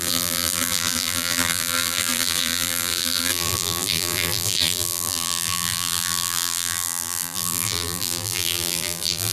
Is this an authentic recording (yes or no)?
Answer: no